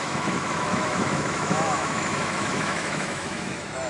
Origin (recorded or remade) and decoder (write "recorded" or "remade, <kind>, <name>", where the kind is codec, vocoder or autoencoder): remade, autoencoder, DAC-VAE